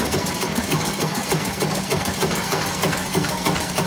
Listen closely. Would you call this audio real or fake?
fake